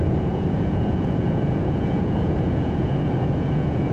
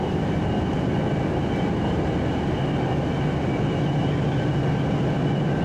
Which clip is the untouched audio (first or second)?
second